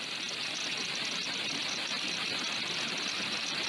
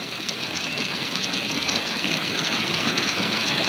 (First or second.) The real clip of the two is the first